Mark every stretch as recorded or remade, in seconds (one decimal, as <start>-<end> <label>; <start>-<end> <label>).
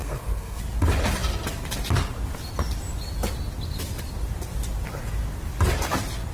0.0-0.6 remade; 0.6-6.3 recorded